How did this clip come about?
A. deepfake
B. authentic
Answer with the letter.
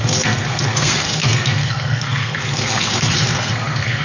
A